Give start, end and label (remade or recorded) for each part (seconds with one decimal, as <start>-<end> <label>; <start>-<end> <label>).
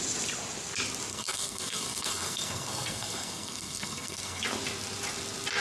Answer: 0.0-1.1 recorded; 1.1-4.4 remade; 4.4-5.6 recorded